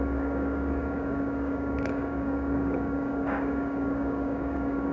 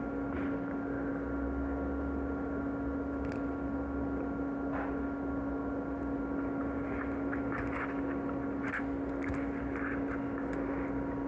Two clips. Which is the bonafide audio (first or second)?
second